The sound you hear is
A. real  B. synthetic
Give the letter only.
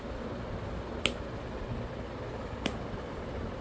A